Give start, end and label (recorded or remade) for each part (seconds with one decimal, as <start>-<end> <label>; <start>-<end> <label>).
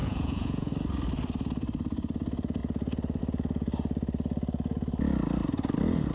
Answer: 0.0-0.7 remade; 0.7-6.1 recorded